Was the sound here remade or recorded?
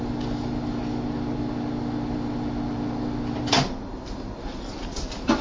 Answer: recorded